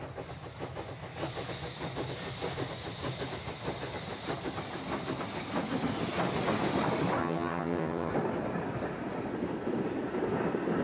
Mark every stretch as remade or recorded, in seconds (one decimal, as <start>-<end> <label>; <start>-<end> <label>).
0.0-7.2 recorded; 7.2-8.1 remade; 8.1-10.8 recorded